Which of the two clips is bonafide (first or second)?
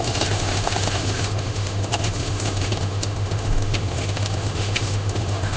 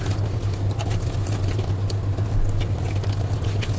second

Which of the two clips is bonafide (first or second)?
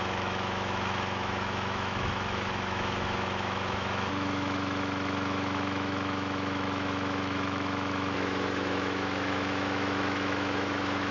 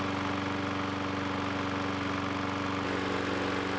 second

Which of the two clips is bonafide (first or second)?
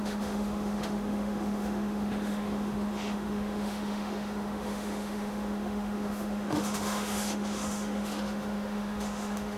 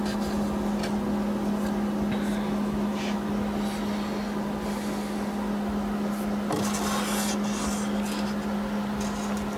second